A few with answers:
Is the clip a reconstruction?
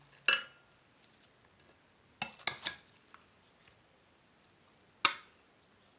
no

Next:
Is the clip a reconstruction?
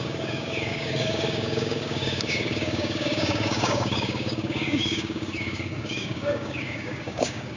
yes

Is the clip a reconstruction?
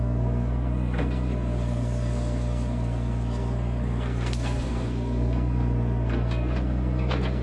yes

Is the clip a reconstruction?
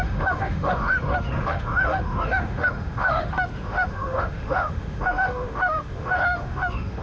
yes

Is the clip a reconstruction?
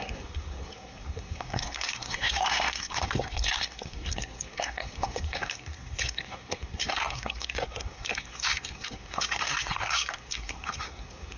yes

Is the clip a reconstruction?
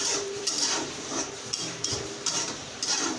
yes